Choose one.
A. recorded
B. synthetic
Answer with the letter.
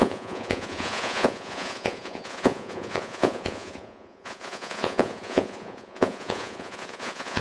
B